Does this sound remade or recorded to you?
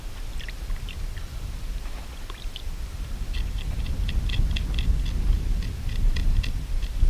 recorded